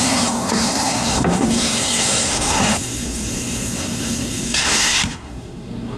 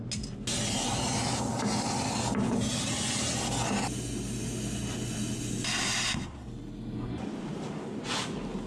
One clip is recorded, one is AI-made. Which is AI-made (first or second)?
first